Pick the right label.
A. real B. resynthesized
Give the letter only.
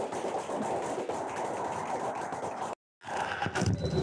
A